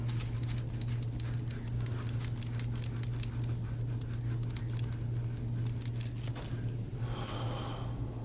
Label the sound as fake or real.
real